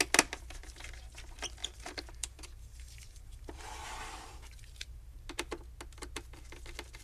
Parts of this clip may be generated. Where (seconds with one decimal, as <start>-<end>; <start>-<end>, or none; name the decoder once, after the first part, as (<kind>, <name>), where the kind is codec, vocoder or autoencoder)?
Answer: 1.6-5.3 (vocoder, BigVGAN v2)